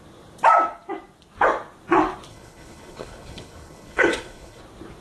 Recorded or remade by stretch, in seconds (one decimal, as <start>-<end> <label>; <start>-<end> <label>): 0.0-2.3 recorded; 2.3-4.6 remade; 4.6-5.0 recorded